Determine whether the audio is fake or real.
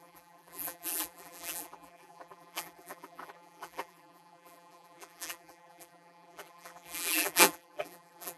fake